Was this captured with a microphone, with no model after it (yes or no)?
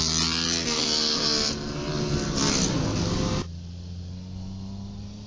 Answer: yes